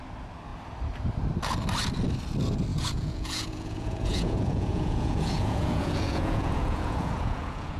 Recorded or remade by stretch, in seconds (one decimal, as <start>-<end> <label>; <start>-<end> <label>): 0.0-2.7 recorded; 2.7-7.8 remade